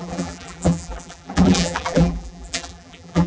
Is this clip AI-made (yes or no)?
yes